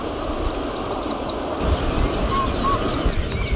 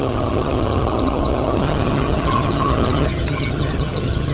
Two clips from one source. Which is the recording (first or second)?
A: first